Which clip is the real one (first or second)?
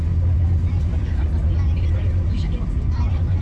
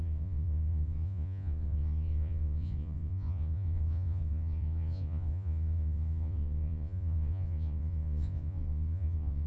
first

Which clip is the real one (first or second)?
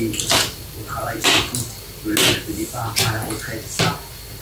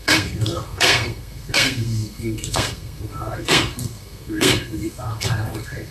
first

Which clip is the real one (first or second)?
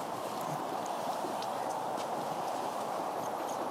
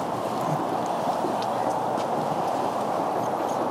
second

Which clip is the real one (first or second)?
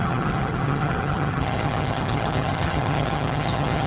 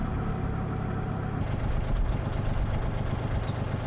second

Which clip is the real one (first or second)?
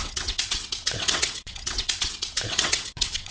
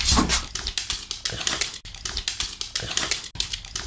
second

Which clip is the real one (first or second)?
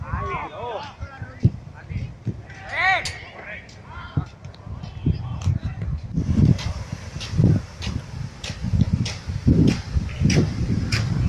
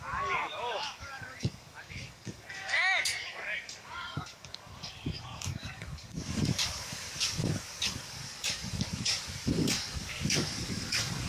first